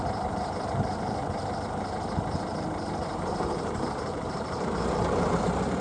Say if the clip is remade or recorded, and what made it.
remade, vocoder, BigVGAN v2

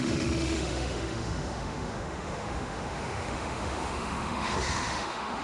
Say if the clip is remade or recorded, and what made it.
remade, autoencoder, DAC-VAE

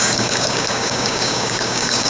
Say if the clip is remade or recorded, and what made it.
remade, codec, DAC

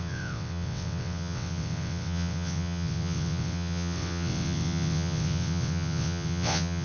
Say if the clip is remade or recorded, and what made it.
remade, vocoder, WaveNeXt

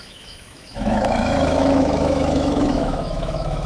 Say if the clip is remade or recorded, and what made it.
remade, autoencoder, DAC-VAE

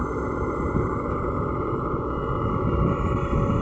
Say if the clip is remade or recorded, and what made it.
recorded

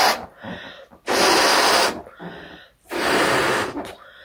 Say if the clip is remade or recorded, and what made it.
recorded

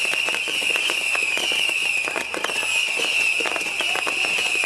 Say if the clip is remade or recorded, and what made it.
remade, vocoder, Vocos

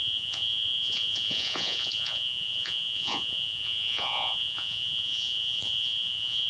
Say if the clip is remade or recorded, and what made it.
remade, vocoder, Vocos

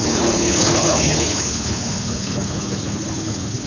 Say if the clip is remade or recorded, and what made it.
remade, codec, HILCodec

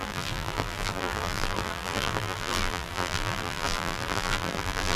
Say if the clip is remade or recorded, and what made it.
remade, vocoder, BigVGAN v2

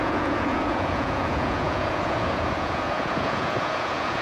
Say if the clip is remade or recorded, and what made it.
remade, vocoder, Vocos